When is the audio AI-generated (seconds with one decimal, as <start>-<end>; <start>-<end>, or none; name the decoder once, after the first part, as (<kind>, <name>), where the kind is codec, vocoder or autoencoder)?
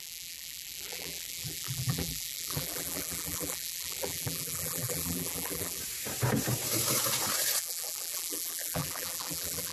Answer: 0.0-5.8 (vocoder, BigVGAN v2); 7.6-9.7